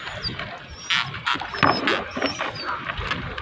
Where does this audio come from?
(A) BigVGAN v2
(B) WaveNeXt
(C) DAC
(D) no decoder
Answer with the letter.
D